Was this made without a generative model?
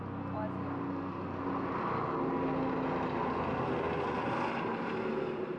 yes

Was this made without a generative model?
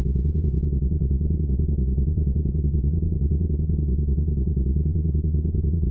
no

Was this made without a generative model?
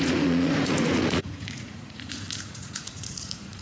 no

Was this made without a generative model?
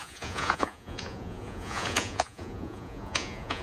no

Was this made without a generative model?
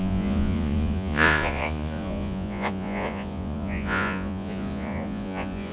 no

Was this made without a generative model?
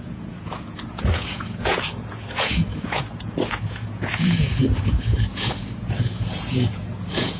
no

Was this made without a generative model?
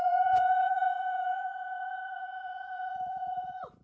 no